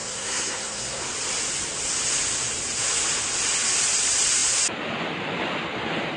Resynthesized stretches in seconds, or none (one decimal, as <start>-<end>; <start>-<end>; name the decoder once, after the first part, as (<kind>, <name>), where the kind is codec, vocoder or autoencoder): 0.0-1.0 (codec, SNAC)